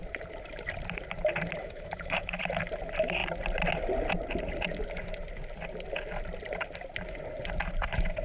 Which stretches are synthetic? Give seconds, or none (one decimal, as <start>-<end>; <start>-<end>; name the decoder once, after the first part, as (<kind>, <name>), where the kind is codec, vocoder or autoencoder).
1.6-2.4 (autoencoder, DAC-VAE)